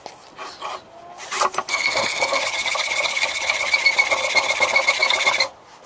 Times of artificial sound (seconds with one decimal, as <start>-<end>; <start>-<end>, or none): 1.7-2.4